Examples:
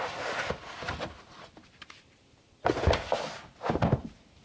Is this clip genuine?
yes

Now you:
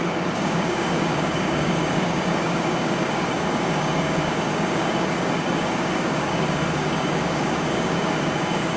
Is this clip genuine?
no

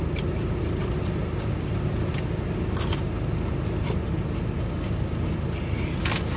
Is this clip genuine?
yes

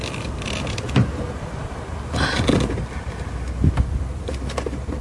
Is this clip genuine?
yes